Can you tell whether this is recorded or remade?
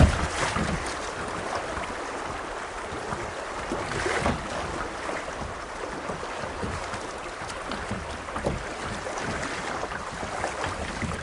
recorded